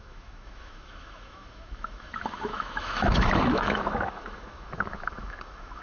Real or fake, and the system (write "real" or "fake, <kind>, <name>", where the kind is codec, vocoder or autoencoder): fake, autoencoder, DAC-VAE